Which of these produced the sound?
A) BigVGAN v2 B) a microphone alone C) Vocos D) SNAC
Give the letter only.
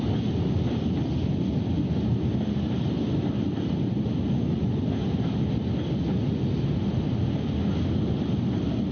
B